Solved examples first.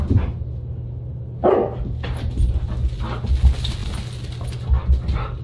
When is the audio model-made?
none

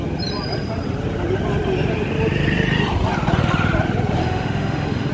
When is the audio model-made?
4.2-5.1 (autoencoder, DAC-VAE)

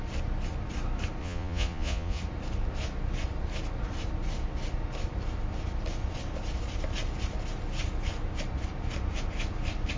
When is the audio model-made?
1.2-2.2 (vocoder, Vocos)

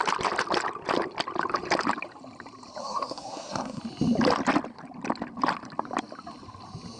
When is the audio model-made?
2.8-3.8 (codec, SNAC)

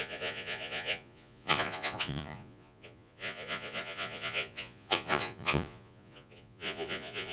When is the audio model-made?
0.0-7.3 (vocoder, Vocos)

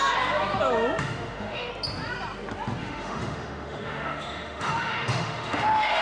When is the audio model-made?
1.0-1.7 (autoencoder, DAC-VAE); 2.8-6.0

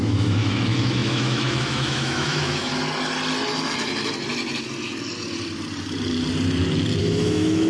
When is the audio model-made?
0.0-2.7 (autoencoder, DAC-VAE); 7.0-7.7